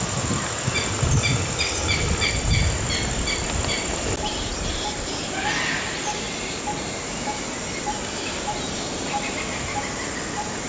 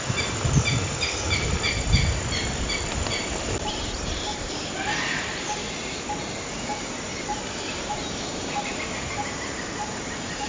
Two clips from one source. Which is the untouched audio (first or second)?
first